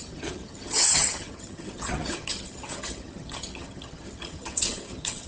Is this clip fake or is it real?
fake